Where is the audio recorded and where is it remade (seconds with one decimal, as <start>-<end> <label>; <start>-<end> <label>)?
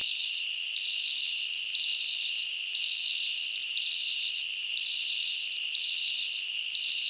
0.0-7.1 recorded